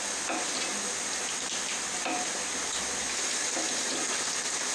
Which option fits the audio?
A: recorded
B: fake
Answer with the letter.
A